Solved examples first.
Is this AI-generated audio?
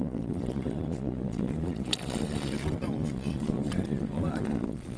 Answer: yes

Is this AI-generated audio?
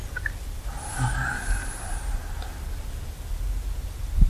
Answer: no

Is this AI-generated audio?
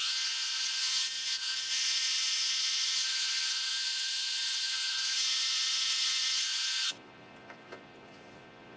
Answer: yes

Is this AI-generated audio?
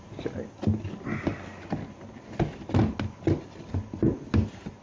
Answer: no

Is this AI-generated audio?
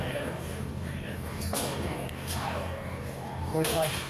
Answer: yes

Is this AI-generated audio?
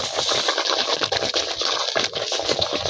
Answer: no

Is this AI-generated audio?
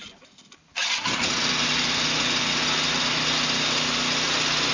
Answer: no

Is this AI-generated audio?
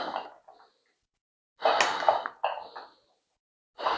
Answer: no